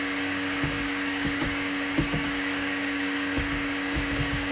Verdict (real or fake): fake